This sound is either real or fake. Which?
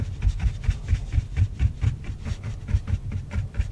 fake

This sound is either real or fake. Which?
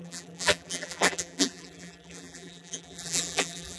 fake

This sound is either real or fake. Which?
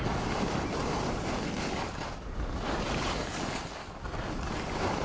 real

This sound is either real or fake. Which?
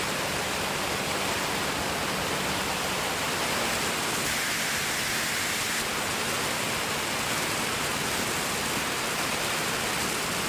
real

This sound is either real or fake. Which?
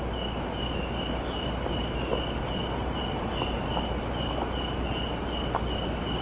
real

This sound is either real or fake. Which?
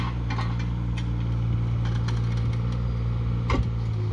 real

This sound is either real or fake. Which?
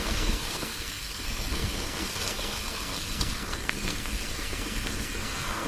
fake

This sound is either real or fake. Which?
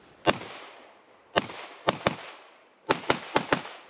real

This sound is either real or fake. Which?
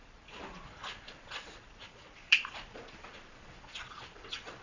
fake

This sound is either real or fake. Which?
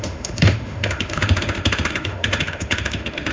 fake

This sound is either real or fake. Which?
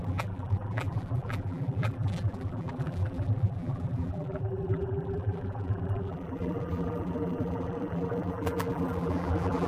fake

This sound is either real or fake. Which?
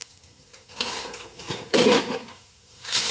fake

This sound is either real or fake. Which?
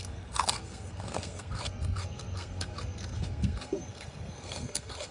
fake